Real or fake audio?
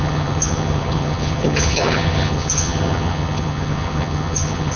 fake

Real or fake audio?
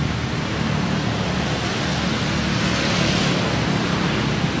real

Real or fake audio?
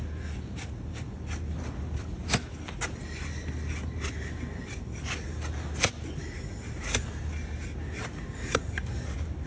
real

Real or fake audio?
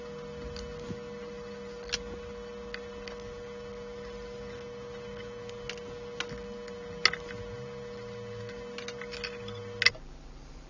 real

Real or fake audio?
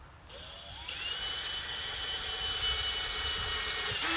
real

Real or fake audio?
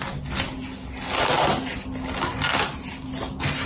real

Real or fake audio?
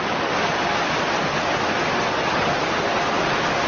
real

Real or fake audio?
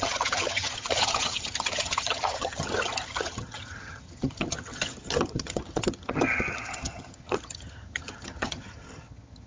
fake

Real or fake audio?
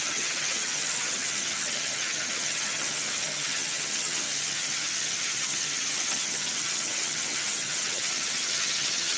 fake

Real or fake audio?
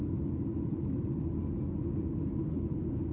real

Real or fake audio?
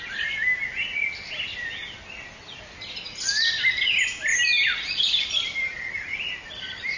real